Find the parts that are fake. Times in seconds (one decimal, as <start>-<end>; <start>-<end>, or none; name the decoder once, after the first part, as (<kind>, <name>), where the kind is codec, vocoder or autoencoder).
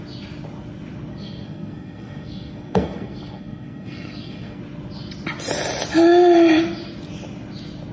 1.1-4.6 (codec, SNAC)